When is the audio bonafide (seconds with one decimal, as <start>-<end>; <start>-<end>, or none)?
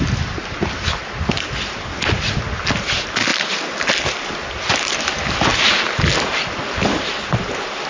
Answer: 0.0-7.9